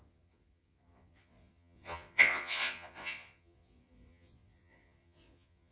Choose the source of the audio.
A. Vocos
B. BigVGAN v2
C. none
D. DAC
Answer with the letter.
A